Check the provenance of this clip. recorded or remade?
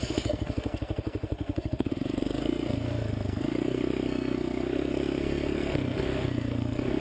remade